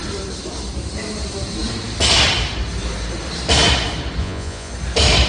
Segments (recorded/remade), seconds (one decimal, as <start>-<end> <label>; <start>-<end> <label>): 0.0-4.2 recorded; 4.2-4.7 remade; 4.7-5.3 recorded